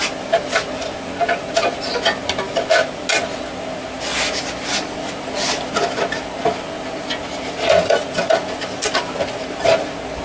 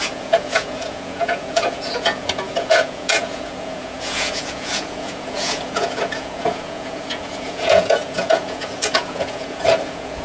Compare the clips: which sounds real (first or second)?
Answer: first